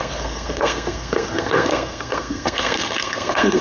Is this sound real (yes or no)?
no